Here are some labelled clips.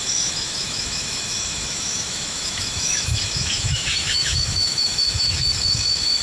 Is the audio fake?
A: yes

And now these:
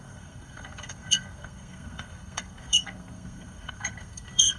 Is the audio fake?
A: yes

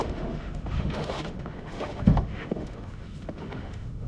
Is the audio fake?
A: yes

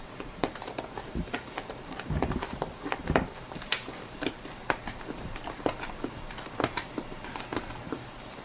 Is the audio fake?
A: yes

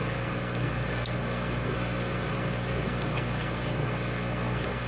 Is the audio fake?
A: yes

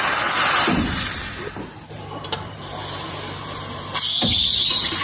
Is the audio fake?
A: yes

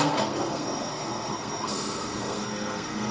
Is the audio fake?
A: yes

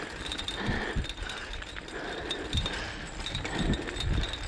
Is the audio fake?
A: no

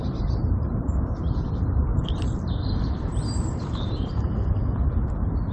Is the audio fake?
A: yes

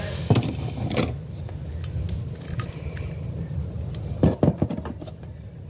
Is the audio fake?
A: no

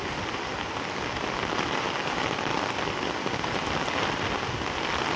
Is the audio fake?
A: no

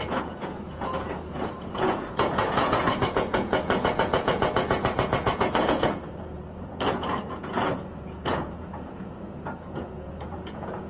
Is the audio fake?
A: yes